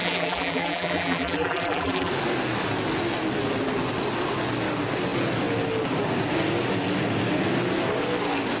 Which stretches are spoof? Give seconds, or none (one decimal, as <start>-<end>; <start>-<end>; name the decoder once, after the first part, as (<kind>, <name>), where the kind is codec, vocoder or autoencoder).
0.0-2.1 (vocoder, BigVGAN v2)